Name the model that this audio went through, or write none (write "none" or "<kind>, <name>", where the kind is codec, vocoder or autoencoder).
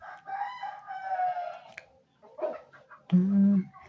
none